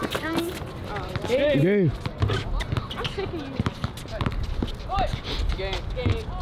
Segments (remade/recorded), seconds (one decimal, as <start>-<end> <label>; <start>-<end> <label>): 0.0-6.4 recorded